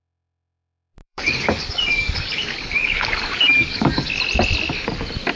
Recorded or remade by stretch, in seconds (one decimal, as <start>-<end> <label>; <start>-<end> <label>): 0.0-1.0 recorded; 1.0-4.2 remade; 4.2-5.4 recorded

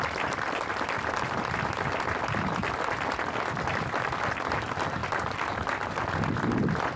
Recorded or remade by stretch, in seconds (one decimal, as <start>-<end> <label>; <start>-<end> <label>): 0.0-7.0 recorded

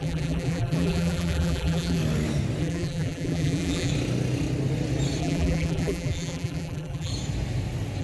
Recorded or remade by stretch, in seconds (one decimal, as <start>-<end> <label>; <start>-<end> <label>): 0.0-2.0 remade; 2.0-2.6 recorded; 2.6-3.9 remade; 3.9-5.2 recorded; 5.2-7.1 remade; 7.1-8.0 recorded

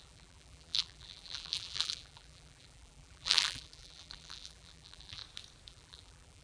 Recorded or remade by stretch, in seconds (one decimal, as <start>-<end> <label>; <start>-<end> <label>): 0.0-5.2 remade; 5.2-5.7 recorded; 5.7-6.4 remade

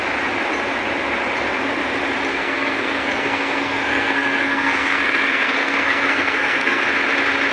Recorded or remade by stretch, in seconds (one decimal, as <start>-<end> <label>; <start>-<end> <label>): 0.0-2.3 recorded; 2.3-6.8 remade; 6.8-7.5 recorded

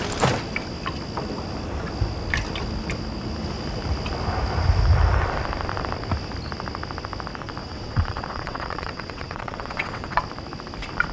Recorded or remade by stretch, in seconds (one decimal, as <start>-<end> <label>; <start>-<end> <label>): 0.0-7.6 recorded; 7.6-10.2 remade; 10.2-11.1 recorded